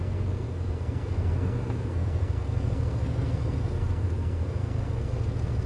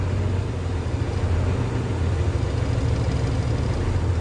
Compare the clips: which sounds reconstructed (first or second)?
first